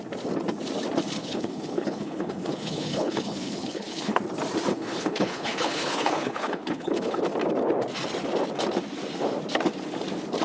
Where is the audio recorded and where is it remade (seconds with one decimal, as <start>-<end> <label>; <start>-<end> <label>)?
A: 0.0-1.2 recorded; 1.2-4.2 remade; 4.2-4.7 recorded; 4.7-7.2 remade; 7.2-10.4 recorded